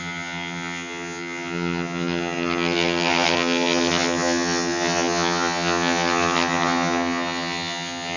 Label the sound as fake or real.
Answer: fake